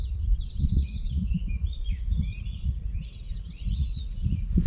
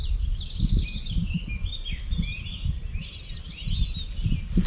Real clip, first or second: second